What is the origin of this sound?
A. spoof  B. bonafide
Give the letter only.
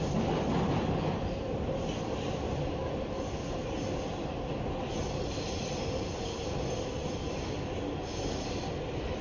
B